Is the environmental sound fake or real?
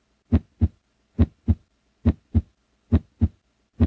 real